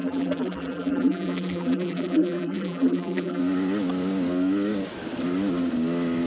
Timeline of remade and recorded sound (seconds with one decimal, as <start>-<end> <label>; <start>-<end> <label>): 0.0-3.4 remade; 3.4-6.3 recorded